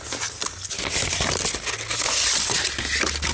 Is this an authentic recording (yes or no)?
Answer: yes